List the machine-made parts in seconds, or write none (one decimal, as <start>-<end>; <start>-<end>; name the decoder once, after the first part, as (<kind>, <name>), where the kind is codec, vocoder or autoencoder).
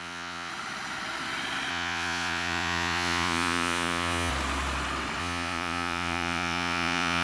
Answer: 0.0-0.5 (vocoder, Vocos); 1.7-4.3; 5.2-7.2